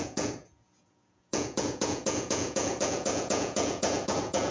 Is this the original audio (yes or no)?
no